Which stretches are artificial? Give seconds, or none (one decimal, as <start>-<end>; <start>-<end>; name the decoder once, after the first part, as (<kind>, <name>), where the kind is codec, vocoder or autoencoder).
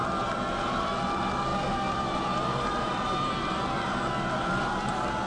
1.5-4.7 (vocoder, BigVGAN v2)